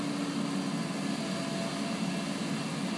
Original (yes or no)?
yes